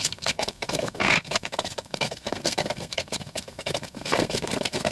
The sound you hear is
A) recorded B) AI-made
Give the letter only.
B